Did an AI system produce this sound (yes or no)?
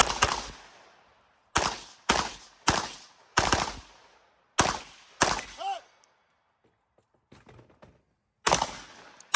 no